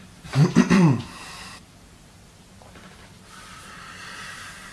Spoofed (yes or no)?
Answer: yes